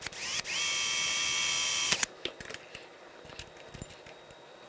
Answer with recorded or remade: recorded